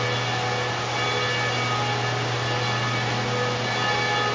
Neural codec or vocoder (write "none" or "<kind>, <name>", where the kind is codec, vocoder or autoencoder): none